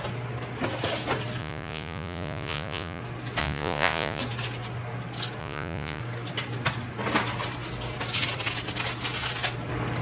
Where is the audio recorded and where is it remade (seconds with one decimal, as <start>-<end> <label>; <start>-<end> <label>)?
0.0-1.4 recorded; 1.4-3.0 remade; 3.0-3.4 recorded; 3.4-4.2 remade; 4.2-5.4 recorded; 5.4-6.0 remade; 6.0-10.0 recorded